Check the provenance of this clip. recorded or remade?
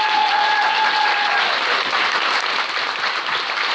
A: recorded